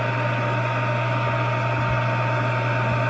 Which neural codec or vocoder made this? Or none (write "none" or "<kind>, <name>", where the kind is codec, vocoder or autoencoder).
none